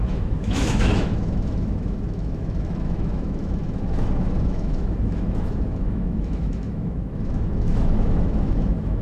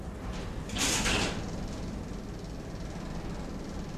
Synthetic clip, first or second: first